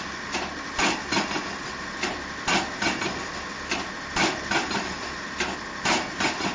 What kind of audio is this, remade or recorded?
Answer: recorded